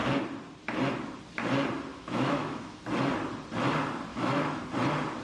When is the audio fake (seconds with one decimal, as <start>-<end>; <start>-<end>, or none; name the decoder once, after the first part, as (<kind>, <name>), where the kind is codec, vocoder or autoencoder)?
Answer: 1.9-2.8 (autoencoder, DAC-VAE); 4.1-4.6